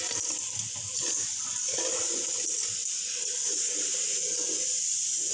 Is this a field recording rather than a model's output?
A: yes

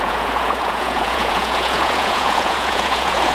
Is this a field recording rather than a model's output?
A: no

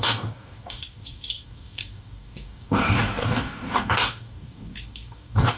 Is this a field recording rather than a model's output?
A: no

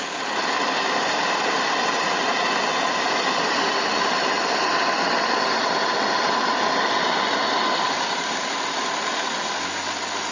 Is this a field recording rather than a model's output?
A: yes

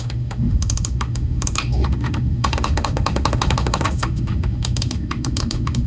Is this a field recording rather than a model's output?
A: no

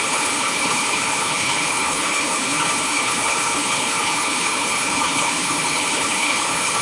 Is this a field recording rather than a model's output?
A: no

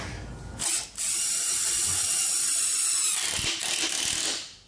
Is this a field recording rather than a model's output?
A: yes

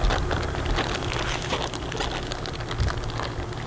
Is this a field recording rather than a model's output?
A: yes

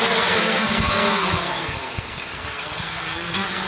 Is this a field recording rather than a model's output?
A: no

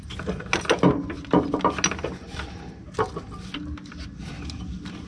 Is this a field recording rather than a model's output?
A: yes